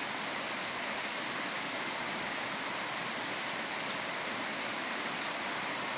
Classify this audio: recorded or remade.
recorded